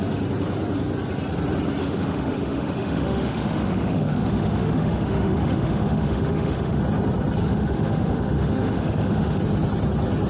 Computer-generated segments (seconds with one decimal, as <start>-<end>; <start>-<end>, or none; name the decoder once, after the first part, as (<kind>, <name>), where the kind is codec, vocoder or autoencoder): 1.8-6.8 (autoencoder, DAC-VAE); 7.4-9.4